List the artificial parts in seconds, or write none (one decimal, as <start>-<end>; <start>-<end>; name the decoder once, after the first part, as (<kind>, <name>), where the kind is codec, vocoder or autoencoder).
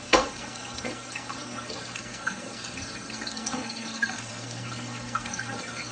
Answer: 0.0-5.9 (codec, SNAC)